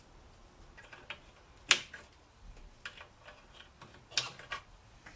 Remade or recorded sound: recorded